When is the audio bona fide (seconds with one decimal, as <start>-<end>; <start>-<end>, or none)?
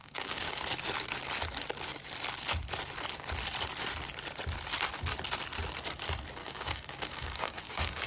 0.6-6.4